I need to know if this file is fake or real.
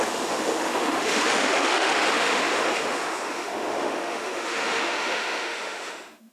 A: fake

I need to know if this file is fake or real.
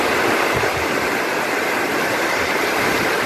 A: real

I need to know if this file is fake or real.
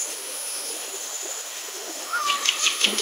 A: fake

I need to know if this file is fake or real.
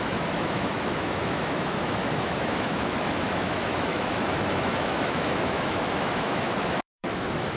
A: fake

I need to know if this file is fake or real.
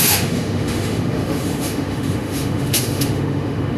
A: fake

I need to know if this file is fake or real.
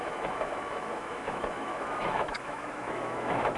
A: fake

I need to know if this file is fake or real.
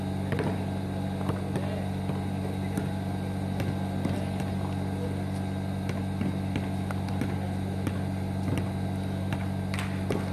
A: real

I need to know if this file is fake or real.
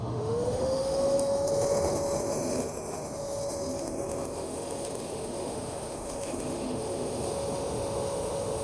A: fake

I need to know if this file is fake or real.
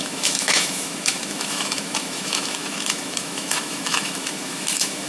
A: fake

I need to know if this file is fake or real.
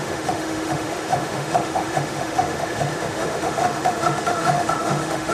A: fake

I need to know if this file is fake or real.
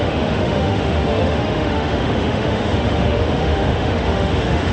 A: fake